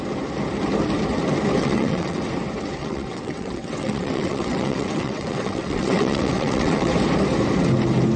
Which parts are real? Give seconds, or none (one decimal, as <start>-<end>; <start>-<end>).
0.0-1.6; 2.2-2.8; 6.9-8.2